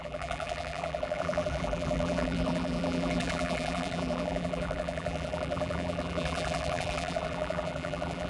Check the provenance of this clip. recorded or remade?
remade